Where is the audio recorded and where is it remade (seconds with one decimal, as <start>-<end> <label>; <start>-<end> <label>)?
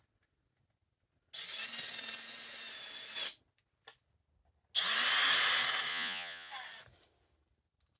0.0-5.9 recorded; 5.9-6.5 remade; 6.5-8.0 recorded